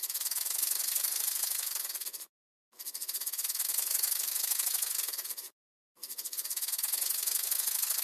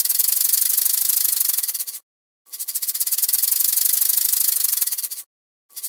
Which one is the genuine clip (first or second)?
second